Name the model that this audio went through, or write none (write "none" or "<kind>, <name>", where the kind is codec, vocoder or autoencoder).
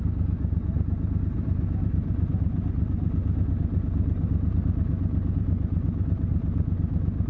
none